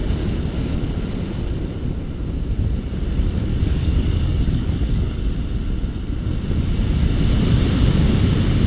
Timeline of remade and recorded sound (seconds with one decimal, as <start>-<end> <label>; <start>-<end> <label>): 0.0-3.5 recorded; 3.5-5.2 remade; 5.2-8.7 recorded